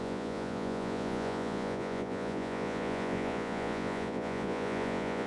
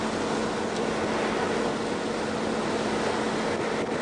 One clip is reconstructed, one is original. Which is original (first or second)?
second